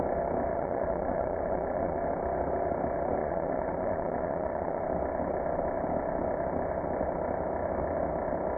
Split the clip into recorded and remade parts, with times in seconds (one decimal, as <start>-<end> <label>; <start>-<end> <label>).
0.0-0.5 recorded; 0.5-2.0 remade; 2.0-3.2 recorded; 3.2-4.8 remade; 4.8-8.6 recorded